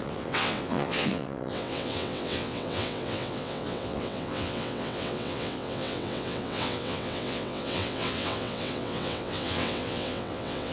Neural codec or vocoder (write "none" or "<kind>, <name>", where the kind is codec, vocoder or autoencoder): vocoder, WaveNeXt